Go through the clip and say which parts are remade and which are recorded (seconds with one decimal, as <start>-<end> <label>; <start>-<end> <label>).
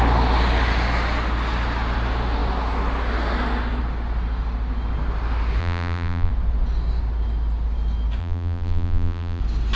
0.0-5.6 recorded; 5.6-6.3 remade; 6.3-8.2 recorded; 8.2-9.4 remade; 9.4-9.8 recorded